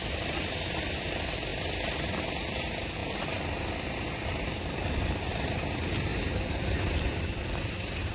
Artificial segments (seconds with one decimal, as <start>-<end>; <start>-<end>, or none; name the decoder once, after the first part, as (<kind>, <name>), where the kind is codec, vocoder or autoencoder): 6.1-7.4 (vocoder, BigVGAN v2)